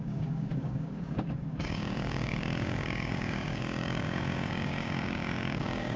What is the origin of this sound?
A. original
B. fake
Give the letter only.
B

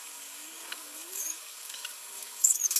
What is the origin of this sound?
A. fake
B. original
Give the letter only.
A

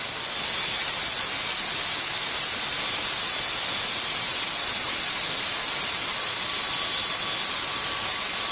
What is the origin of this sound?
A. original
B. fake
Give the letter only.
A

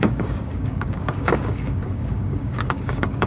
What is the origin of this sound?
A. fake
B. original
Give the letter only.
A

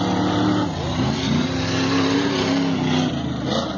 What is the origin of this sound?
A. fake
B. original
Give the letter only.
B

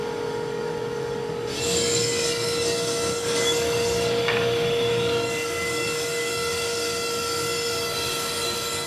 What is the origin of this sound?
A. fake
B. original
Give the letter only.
A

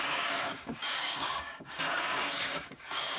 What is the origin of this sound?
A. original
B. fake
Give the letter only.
B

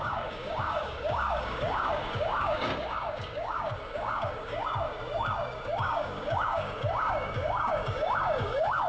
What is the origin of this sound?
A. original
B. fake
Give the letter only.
B